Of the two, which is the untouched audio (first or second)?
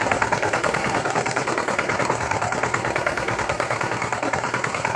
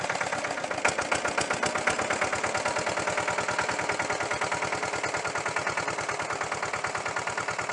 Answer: second